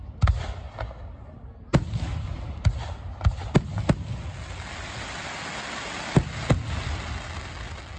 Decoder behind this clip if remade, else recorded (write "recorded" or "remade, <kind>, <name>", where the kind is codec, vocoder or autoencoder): recorded